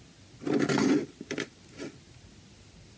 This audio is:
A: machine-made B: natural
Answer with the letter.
B